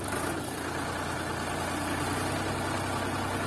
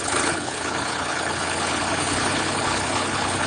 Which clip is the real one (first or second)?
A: first